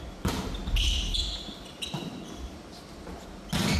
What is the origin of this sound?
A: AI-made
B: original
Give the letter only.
B